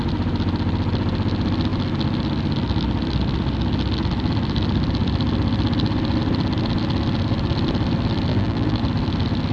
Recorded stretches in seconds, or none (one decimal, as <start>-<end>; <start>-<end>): 0.0-8.3; 8.8-9.5